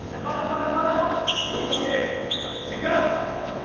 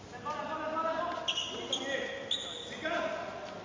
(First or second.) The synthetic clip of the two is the first